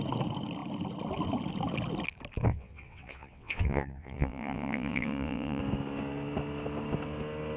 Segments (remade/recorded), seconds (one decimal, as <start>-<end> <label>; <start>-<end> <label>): 0.0-2.5 recorded; 2.5-5.6 remade; 5.6-7.6 recorded